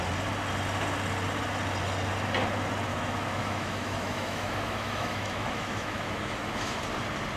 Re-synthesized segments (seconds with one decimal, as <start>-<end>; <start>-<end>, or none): 2.9-6.8